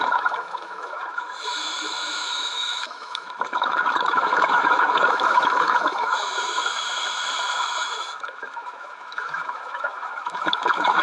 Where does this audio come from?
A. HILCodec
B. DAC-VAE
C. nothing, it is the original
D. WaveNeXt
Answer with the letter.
B